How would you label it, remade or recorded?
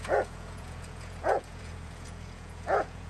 remade